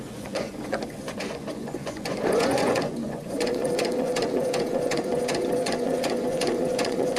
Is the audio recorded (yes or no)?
no